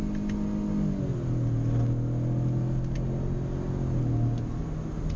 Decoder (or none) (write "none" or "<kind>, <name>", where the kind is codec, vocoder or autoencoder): none